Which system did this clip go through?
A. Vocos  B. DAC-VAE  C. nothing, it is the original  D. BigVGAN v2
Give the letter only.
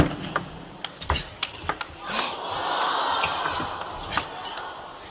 C